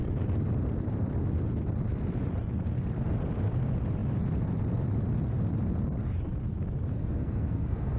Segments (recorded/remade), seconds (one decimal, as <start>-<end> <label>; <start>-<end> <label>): 0.0-6.9 recorded; 6.9-8.0 remade

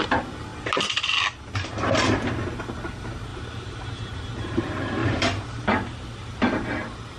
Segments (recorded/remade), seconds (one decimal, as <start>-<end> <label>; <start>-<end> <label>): 0.0-3.3 recorded; 3.3-4.6 remade; 4.6-5.0 recorded; 5.0-6.4 remade; 6.4-7.2 recorded

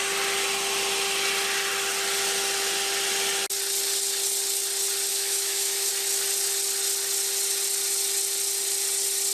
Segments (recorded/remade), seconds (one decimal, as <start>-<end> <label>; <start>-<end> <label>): 0.0-5.1 recorded; 5.1-5.9 remade; 5.9-9.3 recorded